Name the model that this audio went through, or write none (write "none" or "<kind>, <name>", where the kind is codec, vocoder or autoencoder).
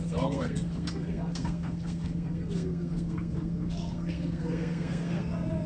codec, SNAC